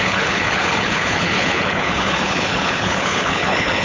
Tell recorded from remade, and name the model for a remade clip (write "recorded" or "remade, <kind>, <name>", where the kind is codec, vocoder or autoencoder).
remade, codec, HILCodec